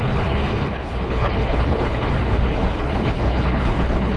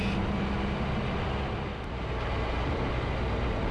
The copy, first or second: first